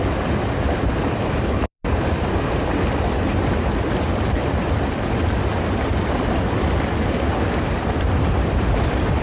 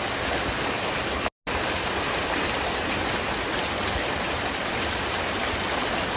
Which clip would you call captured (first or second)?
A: second